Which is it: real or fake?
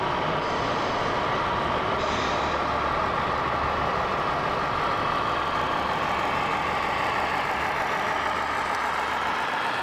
real